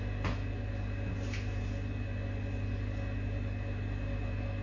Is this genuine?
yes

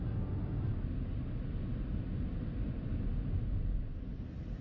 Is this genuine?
yes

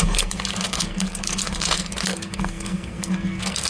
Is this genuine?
no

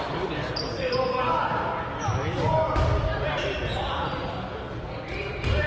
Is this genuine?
no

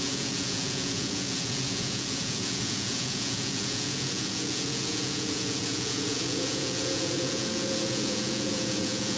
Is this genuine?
no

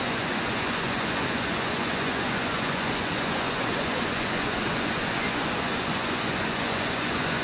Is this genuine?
no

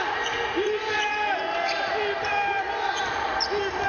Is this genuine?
yes